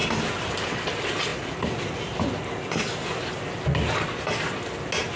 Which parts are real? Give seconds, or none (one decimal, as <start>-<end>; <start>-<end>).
0.0-5.2